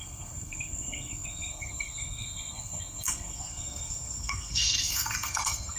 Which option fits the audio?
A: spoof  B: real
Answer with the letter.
A